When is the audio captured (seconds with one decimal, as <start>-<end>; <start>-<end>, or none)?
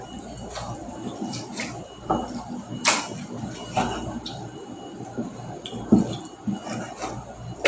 0.0-7.7